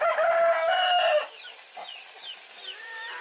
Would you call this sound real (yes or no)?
yes